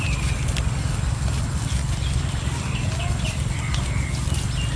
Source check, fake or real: real